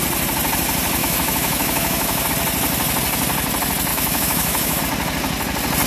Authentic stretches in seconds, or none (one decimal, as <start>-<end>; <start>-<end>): 0.0-1.0; 2.3-3.9; 4.8-5.9